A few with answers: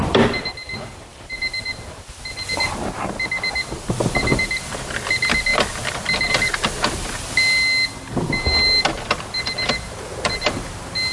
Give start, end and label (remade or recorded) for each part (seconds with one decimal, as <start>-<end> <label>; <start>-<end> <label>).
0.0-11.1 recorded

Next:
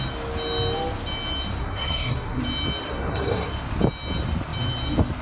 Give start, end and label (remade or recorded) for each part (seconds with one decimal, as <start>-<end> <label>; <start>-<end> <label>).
0.0-1.6 recorded; 1.6-2.4 remade; 2.4-2.8 recorded; 2.8-3.5 remade; 3.5-5.2 recorded

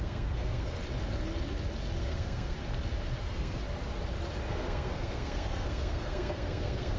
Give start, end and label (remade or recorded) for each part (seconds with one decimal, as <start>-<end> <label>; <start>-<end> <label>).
0.0-0.8 remade; 0.8-2.0 recorded; 2.0-2.6 remade; 2.6-3.2 recorded; 3.2-3.6 remade; 3.6-4.5 recorded; 4.5-7.0 remade

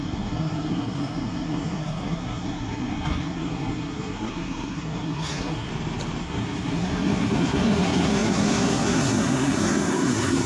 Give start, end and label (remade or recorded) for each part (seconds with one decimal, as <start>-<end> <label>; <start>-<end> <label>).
0.0-5.7 remade; 5.7-6.2 recorded; 6.2-10.5 remade